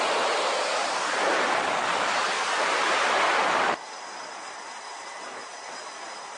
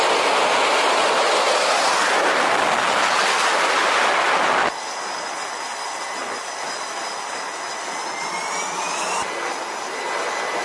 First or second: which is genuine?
second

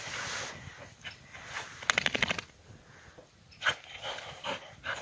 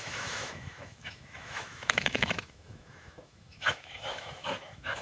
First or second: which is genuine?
first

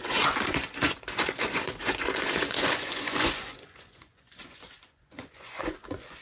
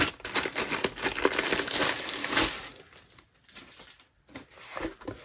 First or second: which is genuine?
second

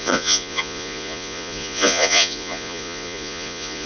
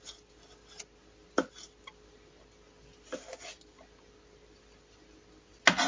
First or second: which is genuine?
second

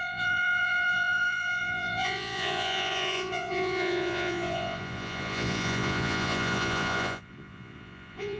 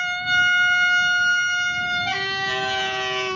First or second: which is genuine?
second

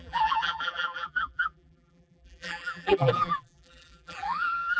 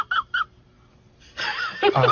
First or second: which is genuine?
second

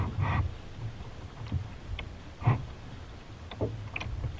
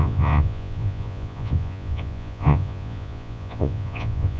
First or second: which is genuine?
first